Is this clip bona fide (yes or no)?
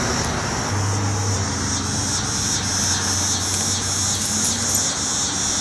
yes